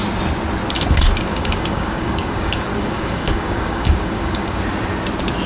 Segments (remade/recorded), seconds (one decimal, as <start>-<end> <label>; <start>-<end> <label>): 0.0-1.3 recorded; 1.3-4.6 remade; 4.6-5.5 recorded